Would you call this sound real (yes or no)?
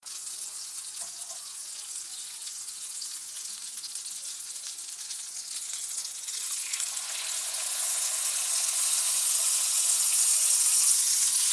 no